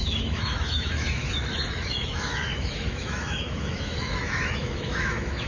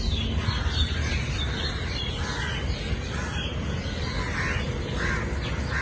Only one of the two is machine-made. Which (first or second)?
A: first